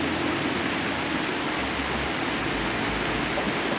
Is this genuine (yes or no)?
yes